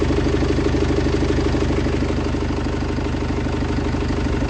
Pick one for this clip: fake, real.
real